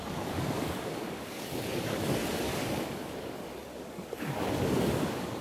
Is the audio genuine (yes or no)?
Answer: no